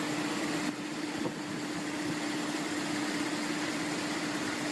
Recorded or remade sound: recorded